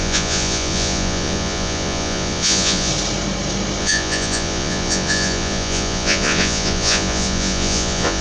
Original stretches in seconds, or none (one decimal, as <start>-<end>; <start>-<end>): 2.9-3.8